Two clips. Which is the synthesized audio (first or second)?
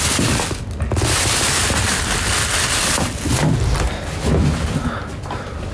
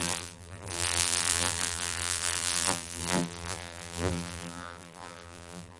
second